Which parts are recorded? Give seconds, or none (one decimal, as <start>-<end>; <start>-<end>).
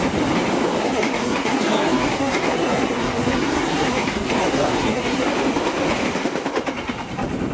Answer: 0.0-0.8; 5.3-7.5